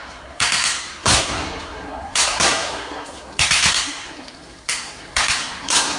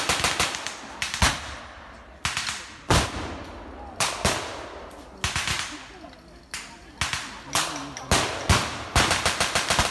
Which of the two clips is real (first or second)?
second